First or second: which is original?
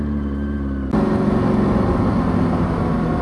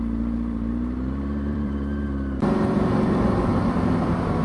first